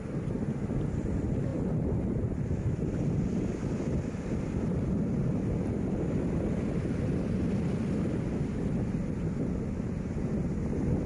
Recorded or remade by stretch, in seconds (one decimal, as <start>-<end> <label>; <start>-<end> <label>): 0.0-11.1 recorded